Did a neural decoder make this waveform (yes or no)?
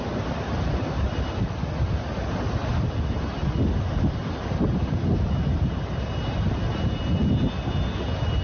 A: no